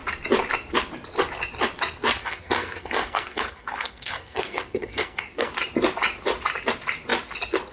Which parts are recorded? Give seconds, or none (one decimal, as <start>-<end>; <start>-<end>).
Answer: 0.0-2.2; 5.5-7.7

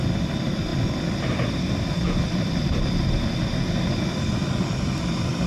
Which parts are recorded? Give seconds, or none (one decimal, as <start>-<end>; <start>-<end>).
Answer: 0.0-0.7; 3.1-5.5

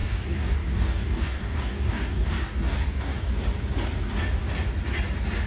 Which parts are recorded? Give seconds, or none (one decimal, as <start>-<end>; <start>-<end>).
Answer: 3.3-5.5

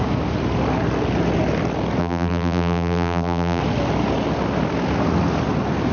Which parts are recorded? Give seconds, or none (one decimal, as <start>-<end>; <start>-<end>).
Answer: 0.0-2.0; 3.6-5.9